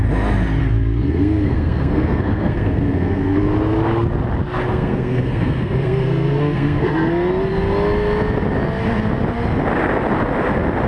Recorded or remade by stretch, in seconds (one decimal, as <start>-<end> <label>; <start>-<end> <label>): 0.0-0.6 recorded; 0.6-3.4 remade; 3.4-4.7 recorded; 4.7-7.1 remade; 7.1-10.9 recorded